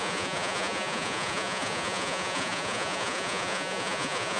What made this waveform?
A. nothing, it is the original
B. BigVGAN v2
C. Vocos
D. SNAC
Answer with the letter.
C